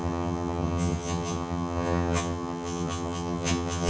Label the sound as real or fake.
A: fake